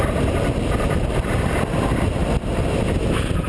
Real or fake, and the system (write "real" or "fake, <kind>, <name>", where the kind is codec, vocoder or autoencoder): real